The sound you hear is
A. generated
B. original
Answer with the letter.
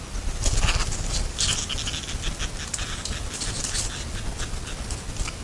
B